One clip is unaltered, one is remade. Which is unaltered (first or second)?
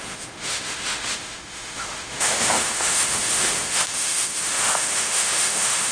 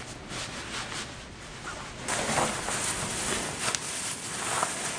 second